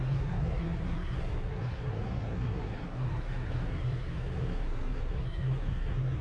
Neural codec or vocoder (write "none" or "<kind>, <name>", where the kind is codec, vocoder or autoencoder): codec, SNAC